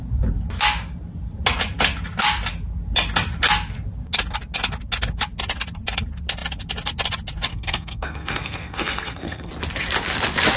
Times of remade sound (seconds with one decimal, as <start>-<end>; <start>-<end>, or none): 7.5-9.5